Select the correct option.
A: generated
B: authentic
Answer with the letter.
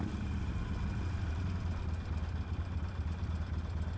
B